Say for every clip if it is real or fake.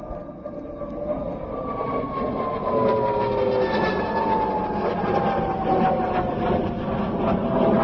real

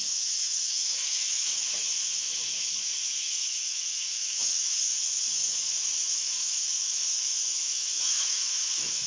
fake